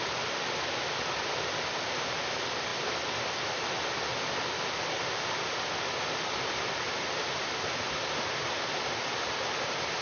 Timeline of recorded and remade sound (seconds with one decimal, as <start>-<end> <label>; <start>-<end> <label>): 0.0-10.0 recorded